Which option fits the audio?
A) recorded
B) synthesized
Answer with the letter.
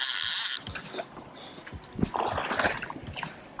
A